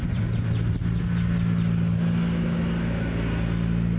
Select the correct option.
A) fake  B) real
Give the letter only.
B